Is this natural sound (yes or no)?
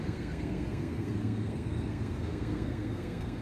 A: no